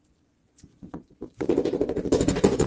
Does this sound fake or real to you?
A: fake